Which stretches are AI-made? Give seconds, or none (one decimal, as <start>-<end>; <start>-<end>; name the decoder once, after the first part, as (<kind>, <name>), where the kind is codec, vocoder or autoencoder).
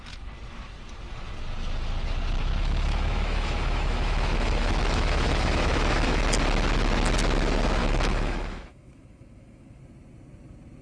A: 2.4-6.2 (autoencoder, DAC-VAE); 7.8-9.8